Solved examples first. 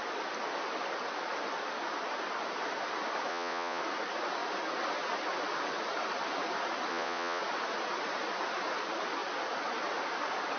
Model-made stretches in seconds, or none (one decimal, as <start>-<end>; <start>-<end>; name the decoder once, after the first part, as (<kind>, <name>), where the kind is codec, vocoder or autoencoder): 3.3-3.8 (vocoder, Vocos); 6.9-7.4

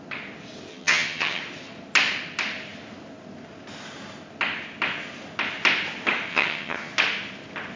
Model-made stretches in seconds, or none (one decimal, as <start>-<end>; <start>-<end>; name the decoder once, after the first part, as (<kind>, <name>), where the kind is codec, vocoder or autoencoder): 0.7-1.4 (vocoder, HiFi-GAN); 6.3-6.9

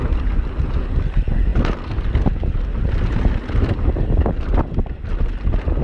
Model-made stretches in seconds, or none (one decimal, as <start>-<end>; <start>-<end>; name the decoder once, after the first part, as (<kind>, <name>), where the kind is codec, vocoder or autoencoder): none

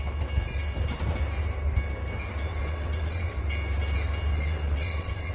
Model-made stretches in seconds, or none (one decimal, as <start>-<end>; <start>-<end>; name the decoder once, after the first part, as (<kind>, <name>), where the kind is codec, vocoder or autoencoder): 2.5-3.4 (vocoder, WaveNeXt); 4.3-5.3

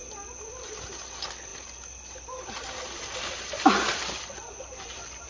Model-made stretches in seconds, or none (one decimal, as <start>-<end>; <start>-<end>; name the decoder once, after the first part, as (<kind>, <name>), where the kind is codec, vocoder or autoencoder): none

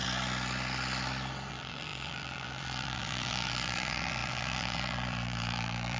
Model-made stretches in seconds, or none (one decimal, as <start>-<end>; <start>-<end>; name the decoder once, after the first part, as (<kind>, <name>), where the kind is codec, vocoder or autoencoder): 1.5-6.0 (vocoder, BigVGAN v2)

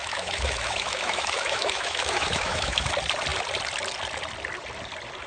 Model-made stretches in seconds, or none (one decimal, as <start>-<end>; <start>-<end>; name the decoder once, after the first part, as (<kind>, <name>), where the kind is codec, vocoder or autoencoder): 0.0-2.9 (autoencoder, DAC-VAE)

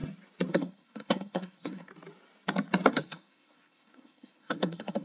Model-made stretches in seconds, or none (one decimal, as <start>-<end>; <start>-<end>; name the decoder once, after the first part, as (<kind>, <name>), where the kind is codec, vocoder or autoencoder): 0.5-1.9 (codec, SNAC); 2.9-5.0